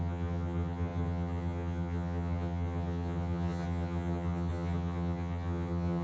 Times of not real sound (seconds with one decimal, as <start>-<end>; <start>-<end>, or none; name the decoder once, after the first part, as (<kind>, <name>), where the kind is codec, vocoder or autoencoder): 0.0-6.0 (vocoder, HiFi-GAN)